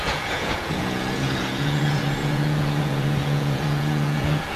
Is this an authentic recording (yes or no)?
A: no